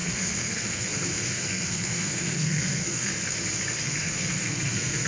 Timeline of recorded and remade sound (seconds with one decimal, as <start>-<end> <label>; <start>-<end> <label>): 0.0-3.1 remade; 3.1-3.8 recorded; 3.8-5.1 remade